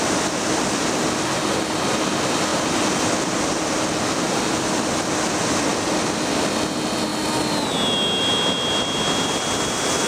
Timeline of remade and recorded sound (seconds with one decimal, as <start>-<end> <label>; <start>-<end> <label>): 0.0-10.1 recorded